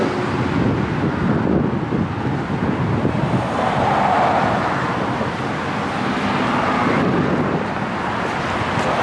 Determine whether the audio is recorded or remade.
recorded